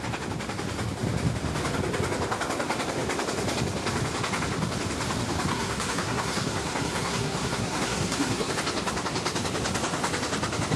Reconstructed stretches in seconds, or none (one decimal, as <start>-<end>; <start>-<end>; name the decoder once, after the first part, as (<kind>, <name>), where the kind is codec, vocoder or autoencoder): 5.5-8.5 (codec, SNAC)